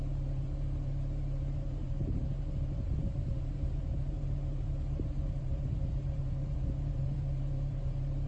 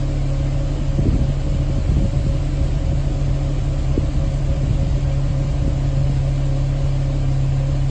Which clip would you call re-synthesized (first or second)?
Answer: first